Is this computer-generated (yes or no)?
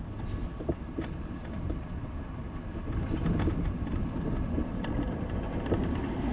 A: no